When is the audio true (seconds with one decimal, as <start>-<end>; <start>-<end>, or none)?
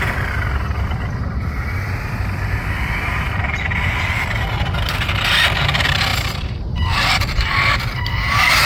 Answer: 0.0-8.7